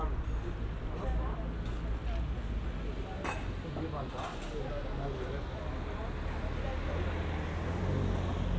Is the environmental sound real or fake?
real